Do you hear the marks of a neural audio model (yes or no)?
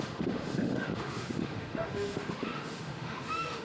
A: yes